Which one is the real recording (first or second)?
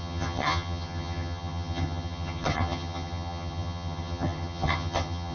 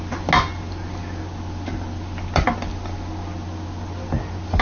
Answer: second